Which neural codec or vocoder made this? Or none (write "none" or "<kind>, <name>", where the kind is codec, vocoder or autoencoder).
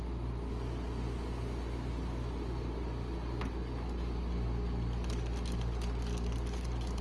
none